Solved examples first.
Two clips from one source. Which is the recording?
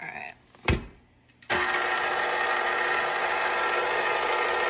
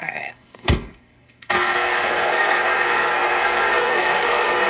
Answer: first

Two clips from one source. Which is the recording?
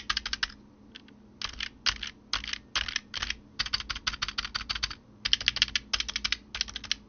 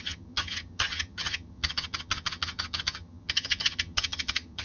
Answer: first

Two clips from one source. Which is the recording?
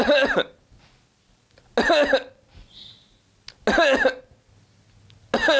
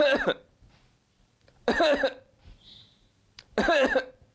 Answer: first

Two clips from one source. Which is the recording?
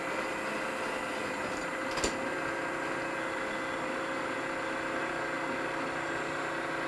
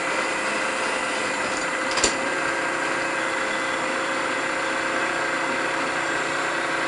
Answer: first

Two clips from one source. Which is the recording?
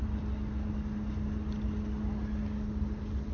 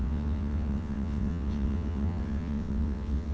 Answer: first